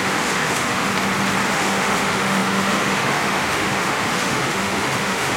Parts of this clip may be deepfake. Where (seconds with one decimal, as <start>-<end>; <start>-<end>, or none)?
0.0-0.9; 1.5-5.4